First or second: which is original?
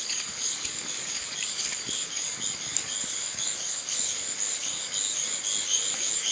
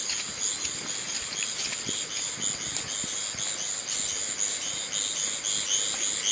second